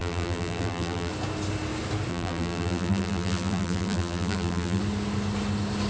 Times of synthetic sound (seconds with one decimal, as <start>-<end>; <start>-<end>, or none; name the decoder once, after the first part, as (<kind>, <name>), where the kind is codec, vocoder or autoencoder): 0.0-1.1 (vocoder, BigVGAN v2); 2.1-4.8